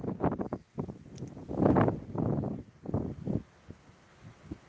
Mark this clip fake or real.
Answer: real